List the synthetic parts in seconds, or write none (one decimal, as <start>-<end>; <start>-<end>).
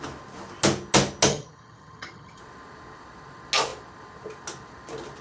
1.3-2.4